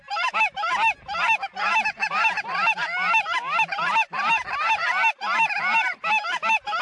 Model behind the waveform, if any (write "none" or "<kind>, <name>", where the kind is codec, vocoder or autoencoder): none